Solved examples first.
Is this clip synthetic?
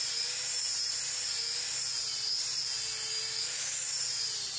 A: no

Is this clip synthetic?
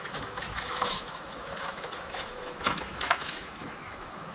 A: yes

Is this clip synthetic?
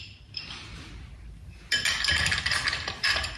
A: no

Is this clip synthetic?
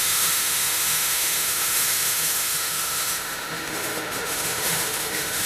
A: yes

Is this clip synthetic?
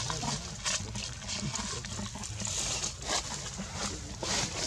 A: no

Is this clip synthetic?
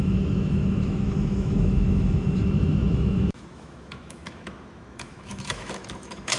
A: yes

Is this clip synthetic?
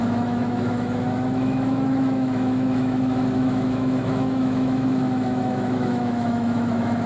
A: yes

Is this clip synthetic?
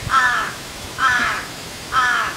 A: yes